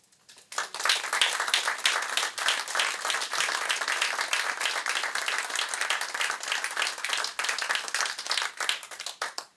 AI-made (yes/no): no